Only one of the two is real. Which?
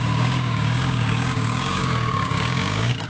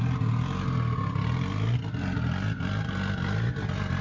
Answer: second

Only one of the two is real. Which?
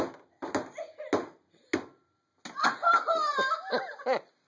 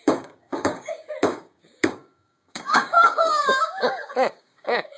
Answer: first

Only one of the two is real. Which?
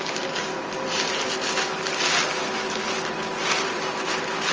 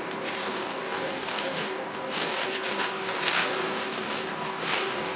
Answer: first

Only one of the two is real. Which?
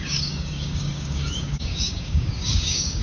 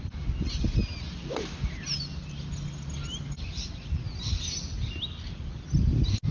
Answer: second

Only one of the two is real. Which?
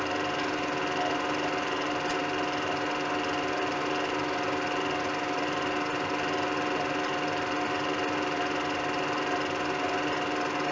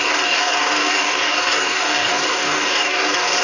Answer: first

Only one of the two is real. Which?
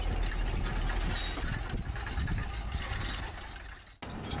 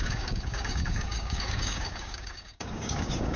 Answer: first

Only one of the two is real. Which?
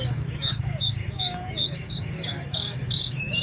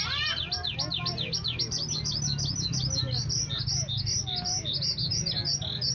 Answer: second